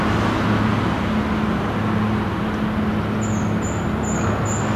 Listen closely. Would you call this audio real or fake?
real